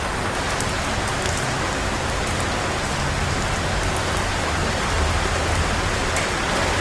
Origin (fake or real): real